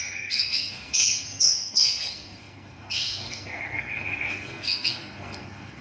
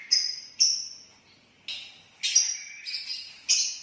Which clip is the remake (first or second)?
first